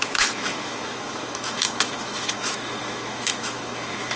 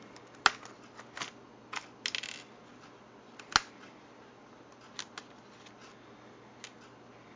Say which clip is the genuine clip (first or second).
second